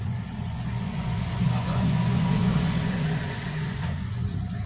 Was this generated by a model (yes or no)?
yes